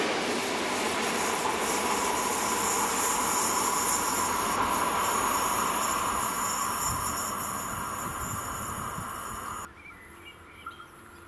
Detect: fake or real real